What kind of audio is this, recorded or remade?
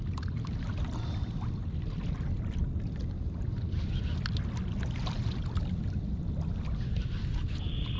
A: recorded